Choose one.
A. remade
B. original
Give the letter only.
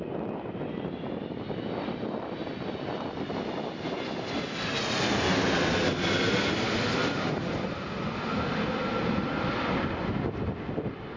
B